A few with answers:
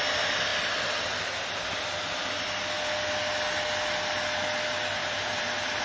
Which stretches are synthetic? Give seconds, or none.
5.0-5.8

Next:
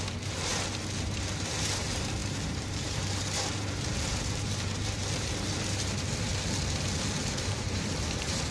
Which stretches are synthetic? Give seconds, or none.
0.0-0.5; 1.0-6.3; 7.4-8.5

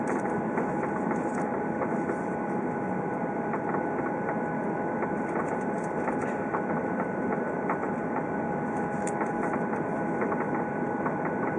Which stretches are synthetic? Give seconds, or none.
0.0-6.2; 6.8-11.6

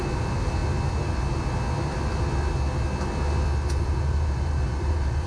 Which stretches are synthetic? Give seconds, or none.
0.0-0.6; 3.8-5.3

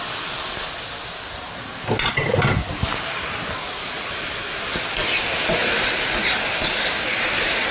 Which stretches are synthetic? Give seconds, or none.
none

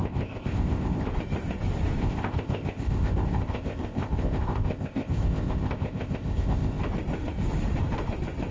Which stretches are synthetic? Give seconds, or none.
0.0-1.1; 2.0-6.8

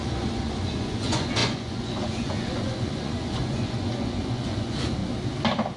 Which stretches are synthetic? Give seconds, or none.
0.0-5.0

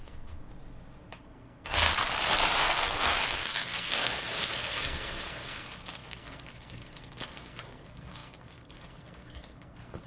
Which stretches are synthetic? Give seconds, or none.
0.0-0.4; 1.1-1.9; 2.6-10.1